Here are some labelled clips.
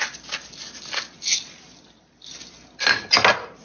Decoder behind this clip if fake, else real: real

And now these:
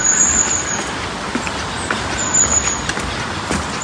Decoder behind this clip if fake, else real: real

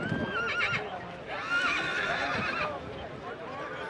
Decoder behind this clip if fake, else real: real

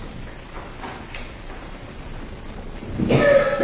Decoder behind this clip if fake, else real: real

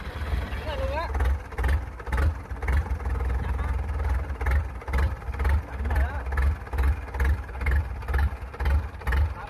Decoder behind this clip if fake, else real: real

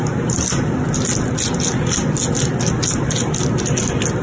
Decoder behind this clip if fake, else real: real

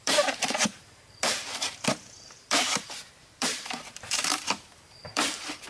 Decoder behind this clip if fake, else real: fake, vocoder, BigVGAN v2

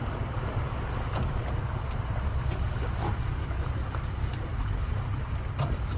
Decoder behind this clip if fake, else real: real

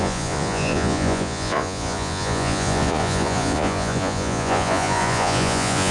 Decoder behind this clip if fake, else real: fake, vocoder, Vocos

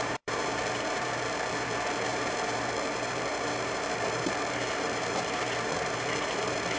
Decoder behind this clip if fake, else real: fake, vocoder, BigVGAN v2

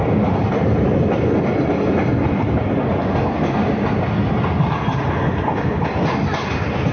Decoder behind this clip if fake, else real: real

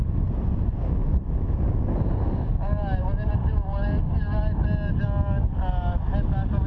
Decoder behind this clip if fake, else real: real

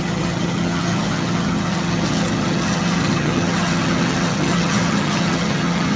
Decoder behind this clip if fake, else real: fake, vocoder, HiFi-GAN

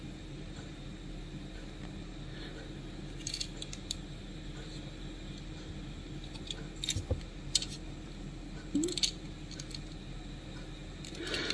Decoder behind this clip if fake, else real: real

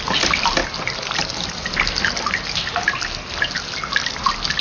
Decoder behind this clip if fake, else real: real